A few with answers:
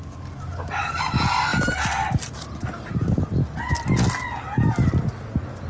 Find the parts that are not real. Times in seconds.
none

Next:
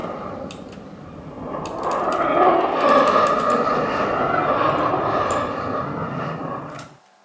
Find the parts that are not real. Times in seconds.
0.0-0.7 (vocoder, BigVGAN v2); 6.4-7.2